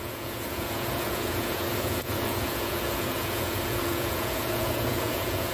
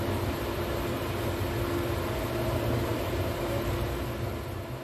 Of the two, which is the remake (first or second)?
first